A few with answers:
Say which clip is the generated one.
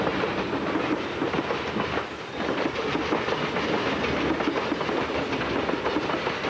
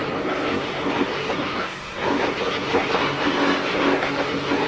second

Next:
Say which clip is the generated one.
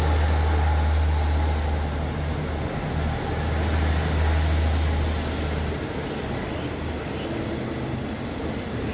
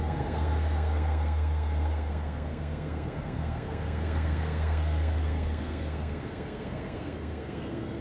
second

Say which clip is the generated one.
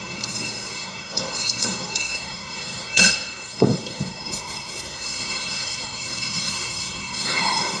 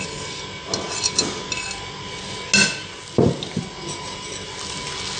first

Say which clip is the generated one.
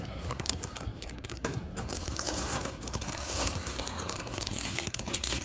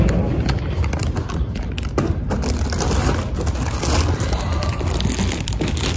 first